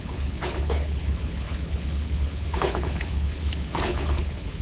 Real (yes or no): no